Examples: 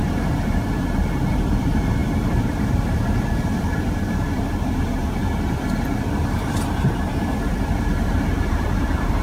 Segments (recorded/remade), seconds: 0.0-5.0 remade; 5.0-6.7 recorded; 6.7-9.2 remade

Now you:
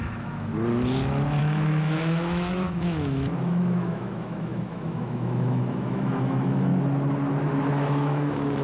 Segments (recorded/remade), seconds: 0.0-0.5 remade; 0.5-1.4 recorded; 1.4-6.7 remade; 6.7-7.7 recorded; 7.7-8.6 remade

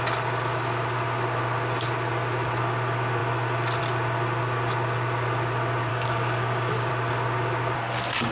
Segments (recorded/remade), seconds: 0.0-5.9 recorded; 5.9-6.9 remade; 6.9-8.3 recorded

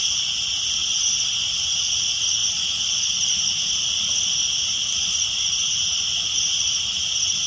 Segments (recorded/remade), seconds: 0.0-7.5 recorded

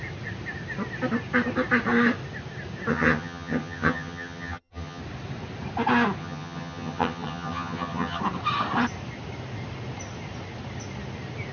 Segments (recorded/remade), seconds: 0.0-2.9 recorded; 2.9-5.0 remade; 5.0-6.2 recorded; 6.2-8.2 remade; 8.2-11.5 recorded